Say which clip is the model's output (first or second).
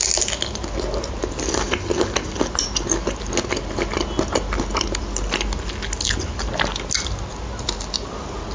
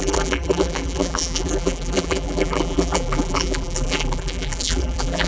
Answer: second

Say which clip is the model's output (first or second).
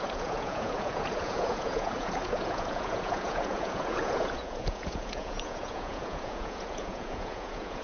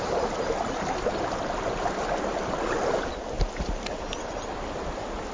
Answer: first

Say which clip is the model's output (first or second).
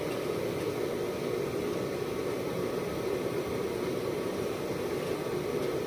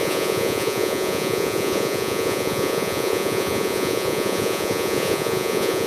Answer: second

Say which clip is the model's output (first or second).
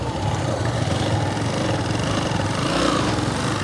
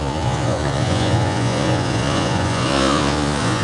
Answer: second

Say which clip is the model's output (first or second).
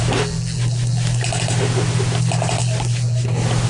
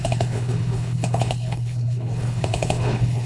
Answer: second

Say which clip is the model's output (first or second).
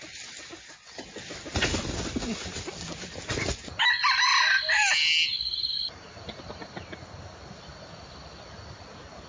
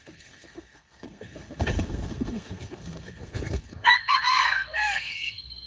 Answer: second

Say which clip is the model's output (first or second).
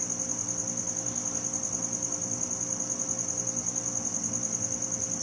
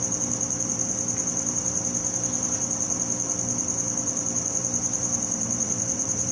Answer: second